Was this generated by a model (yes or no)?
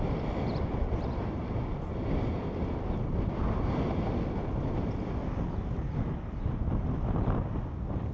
no